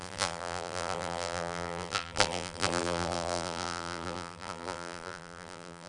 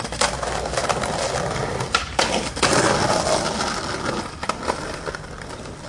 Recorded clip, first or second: second